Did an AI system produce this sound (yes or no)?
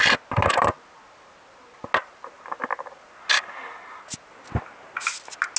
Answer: no